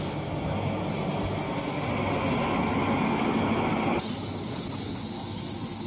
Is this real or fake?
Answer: real